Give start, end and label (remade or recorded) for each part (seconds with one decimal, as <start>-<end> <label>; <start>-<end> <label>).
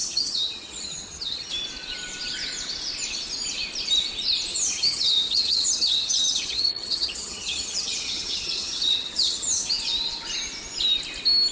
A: 0.0-1.5 remade; 1.5-4.5 recorded; 4.5-9.7 remade; 9.7-11.5 recorded